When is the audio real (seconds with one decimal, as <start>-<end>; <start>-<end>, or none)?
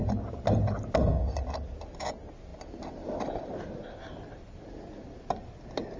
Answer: 0.0-6.0